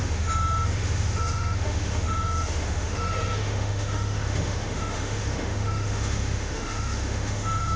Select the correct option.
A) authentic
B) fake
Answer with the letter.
B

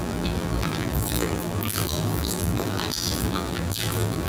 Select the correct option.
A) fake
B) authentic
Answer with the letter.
A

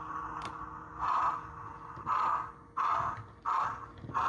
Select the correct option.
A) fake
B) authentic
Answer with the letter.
B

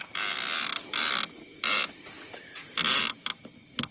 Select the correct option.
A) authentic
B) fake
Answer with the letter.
A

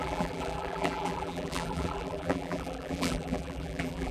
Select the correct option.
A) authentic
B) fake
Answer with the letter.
B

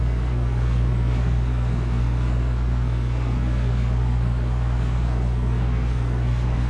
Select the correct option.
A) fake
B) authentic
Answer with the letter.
A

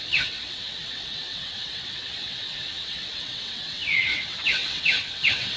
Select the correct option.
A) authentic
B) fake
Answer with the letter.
B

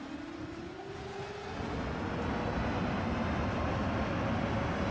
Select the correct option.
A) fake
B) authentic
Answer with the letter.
B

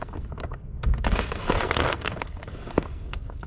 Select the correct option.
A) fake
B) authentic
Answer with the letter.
A